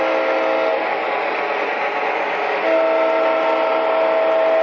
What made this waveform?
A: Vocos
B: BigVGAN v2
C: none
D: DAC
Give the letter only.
C